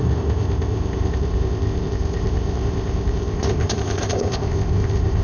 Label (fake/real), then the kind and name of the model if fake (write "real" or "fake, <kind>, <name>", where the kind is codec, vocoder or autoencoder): fake, codec, ZipCodec